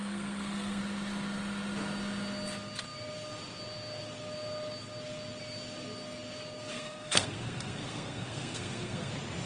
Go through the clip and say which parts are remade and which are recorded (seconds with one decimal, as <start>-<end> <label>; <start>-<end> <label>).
0.0-0.8 remade; 0.8-6.7 recorded; 6.7-9.1 remade; 9.1-9.5 recorded